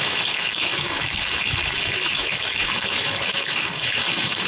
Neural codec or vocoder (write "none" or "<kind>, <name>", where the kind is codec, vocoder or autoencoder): autoencoder, DAC-VAE